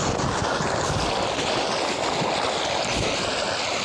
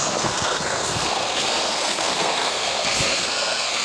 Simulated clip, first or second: second